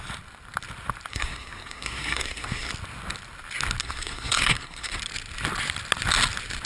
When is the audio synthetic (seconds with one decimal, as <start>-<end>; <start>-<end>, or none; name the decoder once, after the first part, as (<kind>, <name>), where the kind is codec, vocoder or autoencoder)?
1.1-2.7 (codec, SNAC); 3.8-5.0